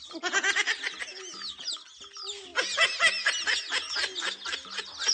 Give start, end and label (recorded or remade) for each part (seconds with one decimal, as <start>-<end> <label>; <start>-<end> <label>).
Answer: 0.0-5.1 recorded